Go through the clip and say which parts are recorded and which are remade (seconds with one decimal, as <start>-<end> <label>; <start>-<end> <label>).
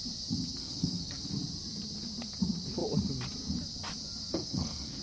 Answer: 0.0-0.6 recorded; 0.6-1.2 remade; 1.2-4.3 recorded; 4.3-5.0 remade